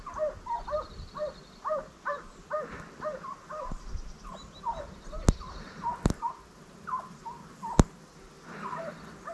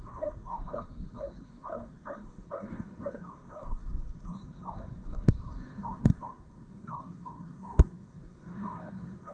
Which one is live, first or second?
first